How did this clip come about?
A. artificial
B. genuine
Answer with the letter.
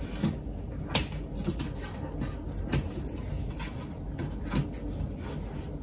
B